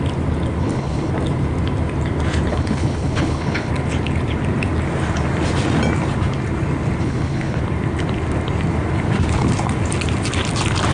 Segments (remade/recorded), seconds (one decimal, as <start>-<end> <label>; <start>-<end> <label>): 0.0-0.6 recorded; 0.6-1.1 remade; 1.1-2.5 recorded; 2.5-3.7 remade; 3.7-7.0 recorded; 7.0-7.6 remade; 7.6-10.9 recorded